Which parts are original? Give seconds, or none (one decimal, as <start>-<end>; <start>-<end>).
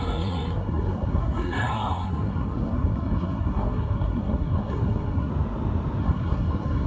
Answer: 5.3-6.0